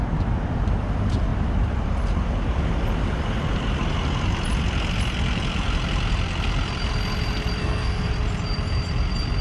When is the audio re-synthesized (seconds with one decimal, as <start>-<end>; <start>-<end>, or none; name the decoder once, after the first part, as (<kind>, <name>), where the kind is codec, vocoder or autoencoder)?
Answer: 7.6-8.1 (codec, SNAC)